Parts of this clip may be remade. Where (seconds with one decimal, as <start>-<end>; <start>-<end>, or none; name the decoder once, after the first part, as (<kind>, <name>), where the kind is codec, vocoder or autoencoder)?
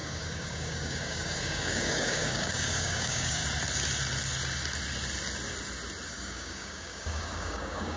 0.0-3.4 (codec, DAC); 6.1-8.0